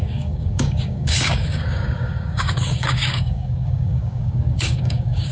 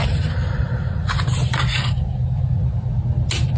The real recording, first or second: second